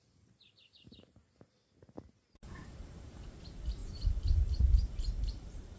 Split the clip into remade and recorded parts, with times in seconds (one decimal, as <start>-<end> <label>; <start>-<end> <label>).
0.0-2.6 recorded; 2.6-3.4 remade; 3.4-3.8 recorded; 3.8-5.8 remade